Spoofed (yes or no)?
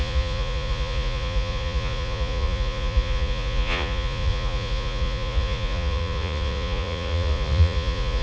yes